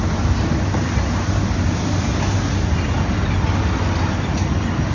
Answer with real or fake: real